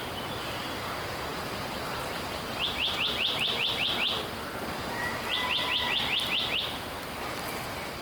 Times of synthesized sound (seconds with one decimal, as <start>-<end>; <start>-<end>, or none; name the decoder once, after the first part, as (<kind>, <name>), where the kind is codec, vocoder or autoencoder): none